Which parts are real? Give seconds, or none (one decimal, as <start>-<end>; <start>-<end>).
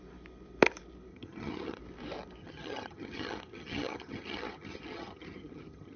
0.0-1.1; 1.8-2.4